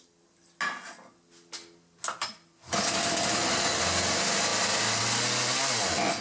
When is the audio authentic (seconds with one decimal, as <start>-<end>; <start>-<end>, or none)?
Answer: 0.0-6.2